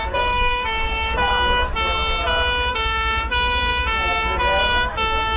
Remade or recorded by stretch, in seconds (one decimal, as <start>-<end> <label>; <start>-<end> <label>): 0.0-1.3 remade; 1.3-2.7 recorded; 2.7-5.4 remade